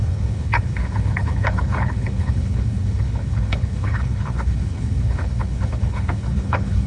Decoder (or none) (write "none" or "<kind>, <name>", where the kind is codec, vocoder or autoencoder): codec, HILCodec